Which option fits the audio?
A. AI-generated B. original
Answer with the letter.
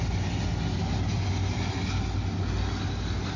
B